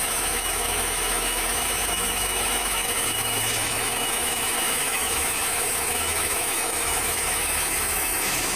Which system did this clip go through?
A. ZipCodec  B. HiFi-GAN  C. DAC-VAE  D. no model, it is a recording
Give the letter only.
C